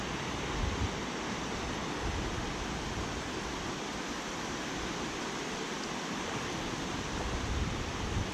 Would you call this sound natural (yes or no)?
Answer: yes